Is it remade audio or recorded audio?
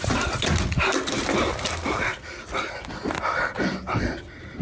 recorded